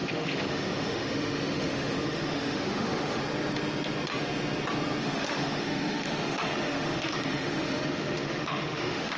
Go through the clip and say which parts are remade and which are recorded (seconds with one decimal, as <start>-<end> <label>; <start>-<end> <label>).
0.0-3.2 remade; 3.2-5.0 recorded; 5.0-9.2 remade